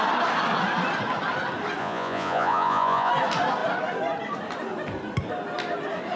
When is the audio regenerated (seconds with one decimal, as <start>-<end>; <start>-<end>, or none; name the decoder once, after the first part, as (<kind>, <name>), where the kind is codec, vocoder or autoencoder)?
1.8-3.1 (vocoder, Vocos)